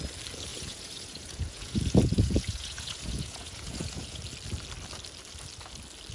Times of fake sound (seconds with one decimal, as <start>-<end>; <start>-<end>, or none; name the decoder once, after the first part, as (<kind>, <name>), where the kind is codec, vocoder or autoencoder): 0.5-4.2 (vocoder, Vocos)